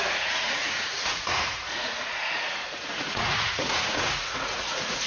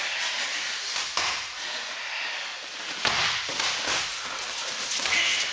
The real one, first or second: second